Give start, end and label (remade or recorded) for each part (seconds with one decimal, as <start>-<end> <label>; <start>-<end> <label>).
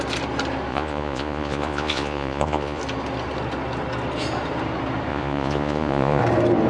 0.0-0.7 recorded; 0.7-2.8 remade; 2.8-5.1 recorded; 5.1-6.2 remade; 6.2-6.7 recorded